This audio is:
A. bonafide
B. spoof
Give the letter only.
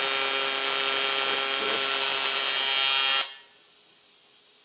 A